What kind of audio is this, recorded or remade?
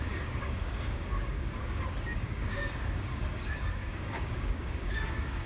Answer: remade